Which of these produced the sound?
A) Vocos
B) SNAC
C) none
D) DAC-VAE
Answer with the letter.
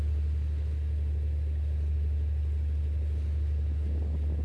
C